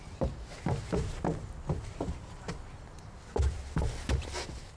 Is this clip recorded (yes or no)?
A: yes